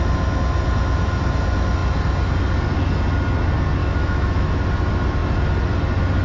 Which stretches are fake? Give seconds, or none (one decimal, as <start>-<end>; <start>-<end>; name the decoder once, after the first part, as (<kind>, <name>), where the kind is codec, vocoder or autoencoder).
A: 3.8-4.5 (autoencoder, DAC-VAE)